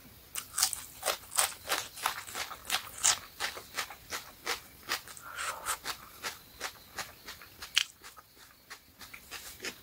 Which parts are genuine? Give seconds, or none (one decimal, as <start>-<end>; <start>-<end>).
0.0-7.8; 9.0-9.8